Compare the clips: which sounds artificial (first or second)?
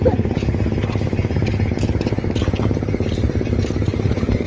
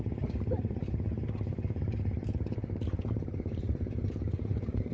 second